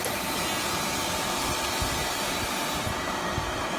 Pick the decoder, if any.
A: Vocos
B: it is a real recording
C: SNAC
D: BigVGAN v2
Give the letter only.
B